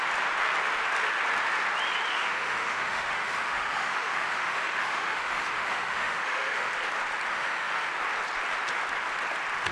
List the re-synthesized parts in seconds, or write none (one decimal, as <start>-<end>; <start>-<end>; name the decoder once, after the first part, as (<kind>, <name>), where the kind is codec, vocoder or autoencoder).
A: 2.1-6.7 (autoencoder, DAC-VAE); 7.3-7.9